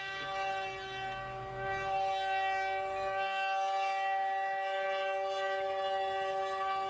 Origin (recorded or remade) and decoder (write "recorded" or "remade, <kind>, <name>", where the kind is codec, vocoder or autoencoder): recorded